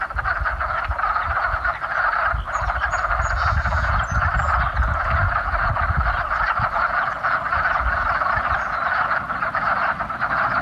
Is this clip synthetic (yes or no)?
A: no